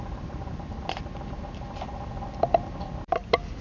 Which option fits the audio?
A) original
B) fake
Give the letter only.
A